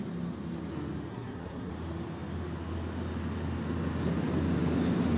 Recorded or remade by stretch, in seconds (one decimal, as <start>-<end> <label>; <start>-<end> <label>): 0.0-1.1 recorded; 1.1-1.7 remade; 1.7-5.2 recorded